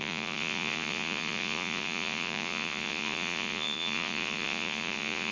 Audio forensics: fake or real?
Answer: fake